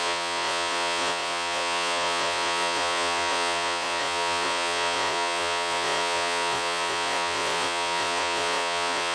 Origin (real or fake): fake